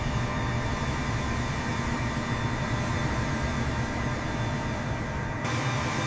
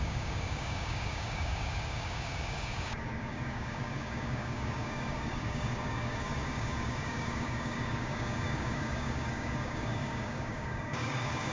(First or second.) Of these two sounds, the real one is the first